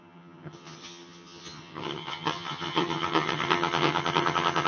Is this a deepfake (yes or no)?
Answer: yes